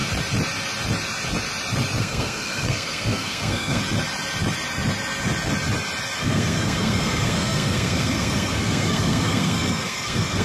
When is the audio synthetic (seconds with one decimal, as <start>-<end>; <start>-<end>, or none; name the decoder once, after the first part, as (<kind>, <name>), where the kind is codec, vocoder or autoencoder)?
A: 2.0-3.8 (codec, SNAC); 6.2-10.4